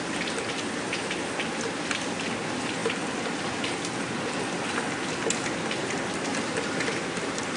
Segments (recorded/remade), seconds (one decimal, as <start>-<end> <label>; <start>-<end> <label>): 0.0-7.6 recorded